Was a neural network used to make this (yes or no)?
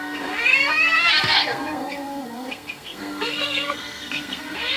yes